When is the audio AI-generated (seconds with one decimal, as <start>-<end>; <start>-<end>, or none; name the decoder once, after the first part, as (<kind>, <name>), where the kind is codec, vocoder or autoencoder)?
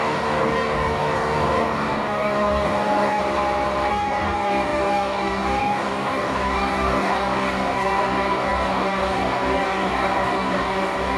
0.0-3.2 (codec, DAC); 3.9-11.2